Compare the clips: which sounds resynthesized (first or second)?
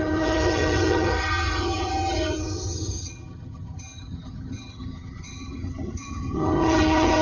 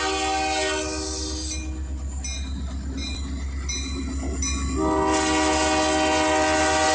first